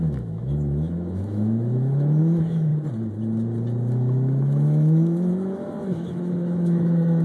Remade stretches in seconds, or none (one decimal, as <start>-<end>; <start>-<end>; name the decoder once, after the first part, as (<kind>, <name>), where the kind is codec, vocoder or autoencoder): 0.0-2.7 (autoencoder, DAC-VAE); 3.9-7.2